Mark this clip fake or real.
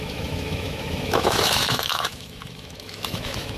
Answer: fake